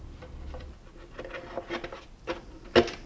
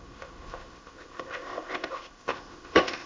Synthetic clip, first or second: second